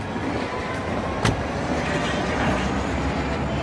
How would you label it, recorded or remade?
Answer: recorded